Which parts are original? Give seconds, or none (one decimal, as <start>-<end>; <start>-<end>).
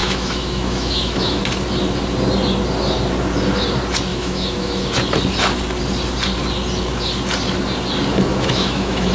1.4-4.1; 4.8-8.3